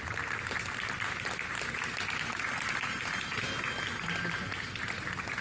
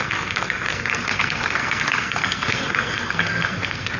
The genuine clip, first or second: first